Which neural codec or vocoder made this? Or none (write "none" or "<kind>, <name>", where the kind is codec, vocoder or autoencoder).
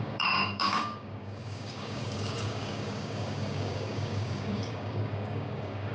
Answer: codec, DAC